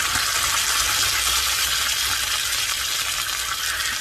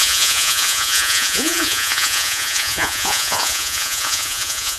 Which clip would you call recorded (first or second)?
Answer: first